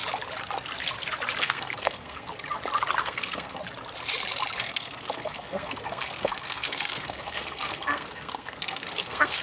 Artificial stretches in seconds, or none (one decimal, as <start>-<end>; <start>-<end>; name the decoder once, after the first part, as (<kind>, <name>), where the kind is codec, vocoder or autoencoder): 1.4-2.3 (codec, SNAC); 3.0-3.6; 4.6-9.4